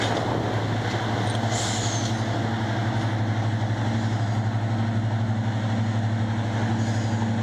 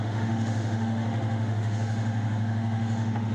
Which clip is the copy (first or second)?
second